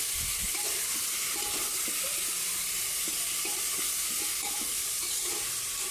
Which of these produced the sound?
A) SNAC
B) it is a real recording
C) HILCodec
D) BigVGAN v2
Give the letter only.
B